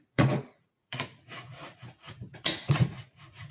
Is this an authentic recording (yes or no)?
no